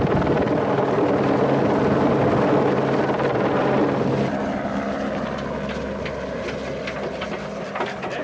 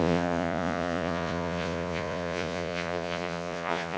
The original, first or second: first